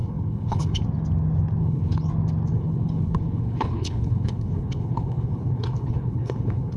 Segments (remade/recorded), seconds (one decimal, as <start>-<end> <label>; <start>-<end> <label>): 0.0-0.8 remade; 0.8-1.6 recorded; 1.6-2.1 remade; 2.1-2.5 recorded; 2.5-6.8 remade